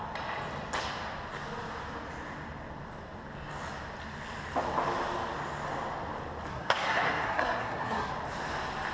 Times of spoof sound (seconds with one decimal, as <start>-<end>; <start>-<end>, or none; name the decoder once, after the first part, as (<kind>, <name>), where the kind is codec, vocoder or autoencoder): 6.5-8.1 (codec, SNAC)